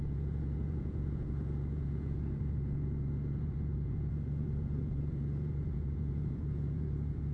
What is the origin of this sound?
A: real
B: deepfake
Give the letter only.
B